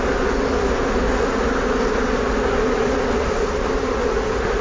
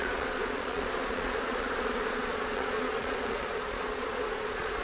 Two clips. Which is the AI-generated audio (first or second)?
second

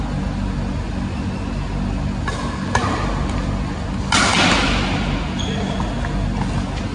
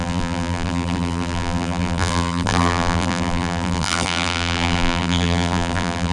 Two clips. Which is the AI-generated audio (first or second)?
second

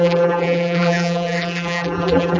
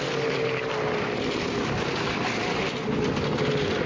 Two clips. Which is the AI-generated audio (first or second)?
first